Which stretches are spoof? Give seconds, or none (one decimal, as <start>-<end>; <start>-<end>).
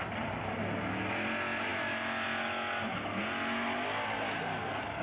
none